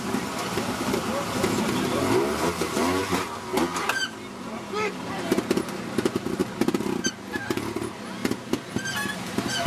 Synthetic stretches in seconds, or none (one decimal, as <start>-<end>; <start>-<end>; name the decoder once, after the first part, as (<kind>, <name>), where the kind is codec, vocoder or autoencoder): 8.2-9.1 (vocoder, BigVGAN v2)